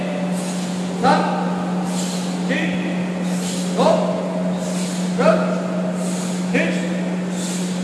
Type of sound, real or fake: real